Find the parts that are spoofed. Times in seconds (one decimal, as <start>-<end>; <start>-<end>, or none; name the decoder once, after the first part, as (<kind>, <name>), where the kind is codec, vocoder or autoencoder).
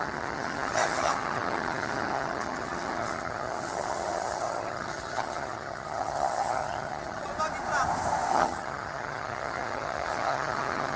0.0-7.3 (vocoder, HiFi-GAN); 8.3-11.0